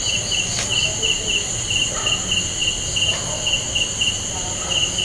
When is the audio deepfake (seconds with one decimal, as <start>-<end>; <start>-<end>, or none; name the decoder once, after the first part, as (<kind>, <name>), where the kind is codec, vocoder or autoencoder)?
none